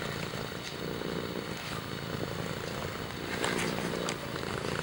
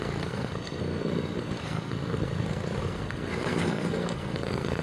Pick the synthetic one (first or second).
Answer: second